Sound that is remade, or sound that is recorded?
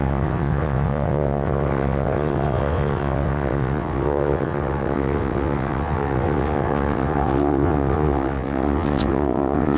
remade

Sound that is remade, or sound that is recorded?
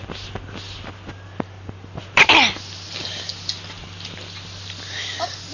recorded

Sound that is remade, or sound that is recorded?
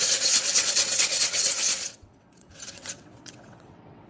remade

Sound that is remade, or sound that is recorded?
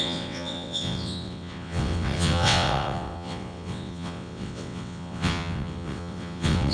remade